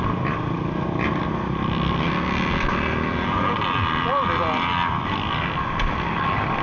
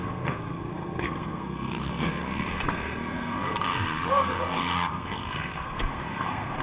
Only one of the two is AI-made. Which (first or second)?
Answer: second